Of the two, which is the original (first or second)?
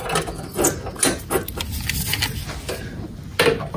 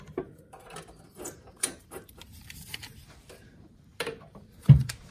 first